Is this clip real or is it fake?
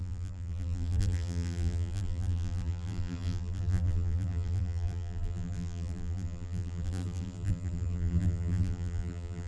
fake